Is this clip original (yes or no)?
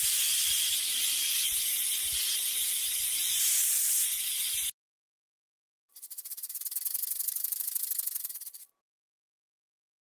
yes